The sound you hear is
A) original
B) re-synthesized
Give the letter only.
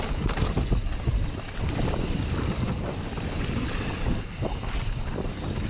A